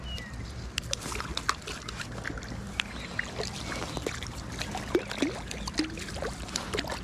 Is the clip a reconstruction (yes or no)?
no